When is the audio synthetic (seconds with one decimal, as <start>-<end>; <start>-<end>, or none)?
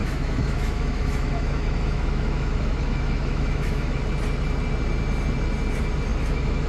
0.0-4.0; 6.1-6.7